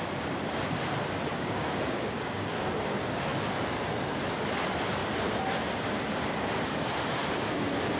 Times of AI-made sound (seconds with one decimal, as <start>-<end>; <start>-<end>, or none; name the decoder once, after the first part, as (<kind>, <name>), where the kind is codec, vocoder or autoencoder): 1.3-2.7 (codec, DAC)